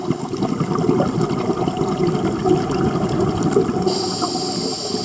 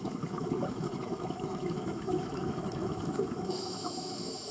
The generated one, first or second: second